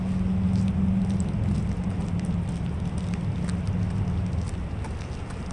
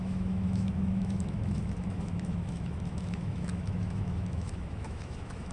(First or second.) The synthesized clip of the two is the second